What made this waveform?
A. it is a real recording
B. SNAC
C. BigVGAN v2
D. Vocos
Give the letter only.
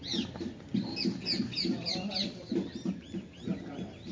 A